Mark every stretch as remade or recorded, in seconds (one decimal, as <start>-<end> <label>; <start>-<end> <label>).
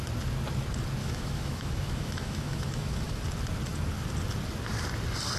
0.0-1.0 recorded; 1.0-3.2 remade; 3.2-5.4 recorded